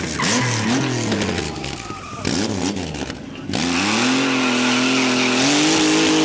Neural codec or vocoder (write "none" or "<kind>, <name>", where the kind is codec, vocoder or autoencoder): none